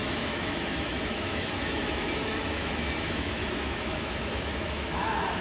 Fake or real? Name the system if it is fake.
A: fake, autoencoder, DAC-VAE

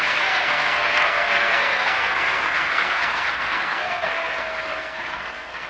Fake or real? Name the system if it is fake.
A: fake, codec, SNAC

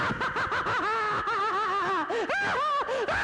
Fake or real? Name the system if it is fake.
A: real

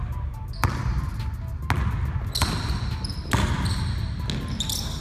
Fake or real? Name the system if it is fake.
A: real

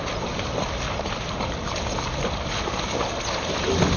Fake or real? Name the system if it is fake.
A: real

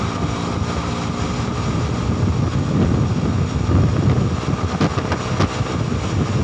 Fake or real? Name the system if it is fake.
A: real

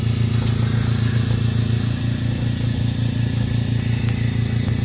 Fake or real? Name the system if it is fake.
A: real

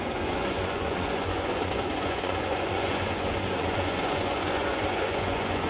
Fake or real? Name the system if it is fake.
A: fake, vocoder, Vocos